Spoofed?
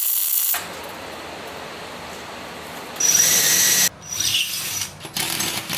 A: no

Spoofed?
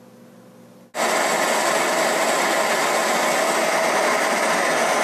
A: no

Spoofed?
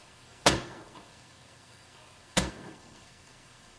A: yes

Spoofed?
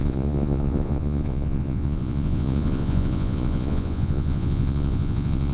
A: yes